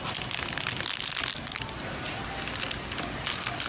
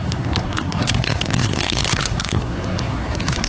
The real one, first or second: first